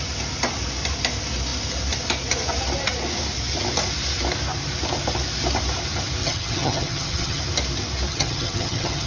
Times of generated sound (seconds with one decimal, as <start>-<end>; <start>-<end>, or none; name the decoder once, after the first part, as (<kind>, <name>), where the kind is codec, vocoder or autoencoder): 6.2-7.4 (vocoder, HiFi-GAN); 8.1-9.1